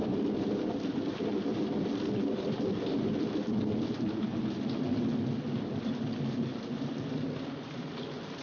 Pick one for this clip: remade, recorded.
recorded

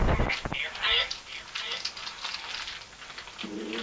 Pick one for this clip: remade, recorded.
recorded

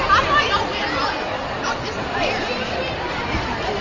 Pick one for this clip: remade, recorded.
recorded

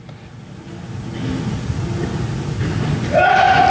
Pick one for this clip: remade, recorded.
recorded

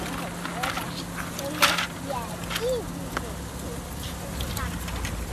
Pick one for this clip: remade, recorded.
recorded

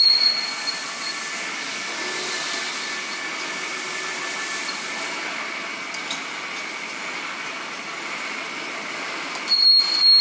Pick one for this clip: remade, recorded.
recorded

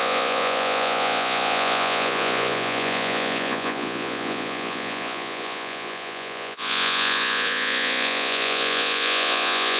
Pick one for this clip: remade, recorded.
remade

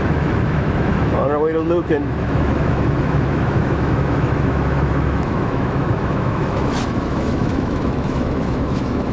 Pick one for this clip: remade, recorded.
remade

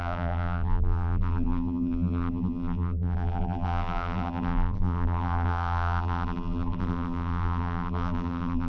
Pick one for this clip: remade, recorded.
remade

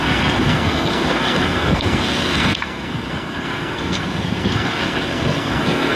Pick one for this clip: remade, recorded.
remade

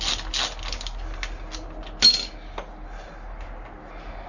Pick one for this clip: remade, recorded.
recorded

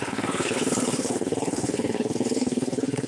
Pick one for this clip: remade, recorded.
remade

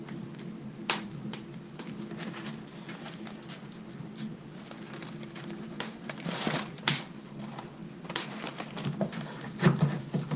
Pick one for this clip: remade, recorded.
remade